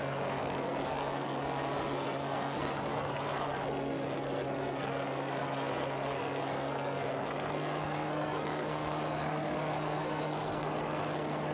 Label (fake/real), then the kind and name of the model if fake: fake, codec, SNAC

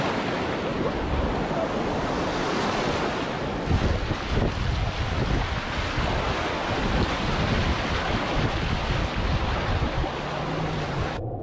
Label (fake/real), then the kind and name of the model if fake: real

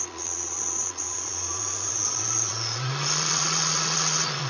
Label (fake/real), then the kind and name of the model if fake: fake, vocoder, Vocos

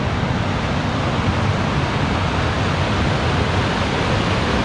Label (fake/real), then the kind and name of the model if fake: real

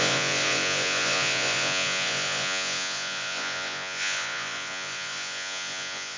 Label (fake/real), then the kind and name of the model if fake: fake, vocoder, Vocos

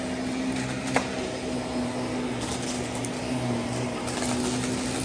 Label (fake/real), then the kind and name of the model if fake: real